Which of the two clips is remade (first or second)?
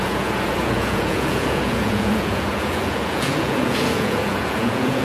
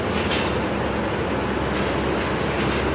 first